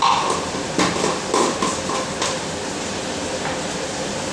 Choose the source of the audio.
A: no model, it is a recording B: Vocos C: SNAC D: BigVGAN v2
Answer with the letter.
D